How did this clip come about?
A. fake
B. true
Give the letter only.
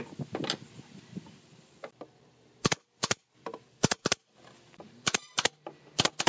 B